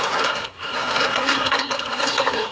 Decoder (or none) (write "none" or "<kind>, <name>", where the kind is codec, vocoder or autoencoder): codec, SNAC